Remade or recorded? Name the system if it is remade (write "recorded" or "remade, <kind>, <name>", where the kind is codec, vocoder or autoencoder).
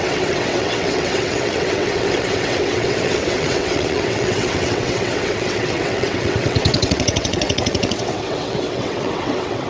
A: remade, vocoder, WaveNeXt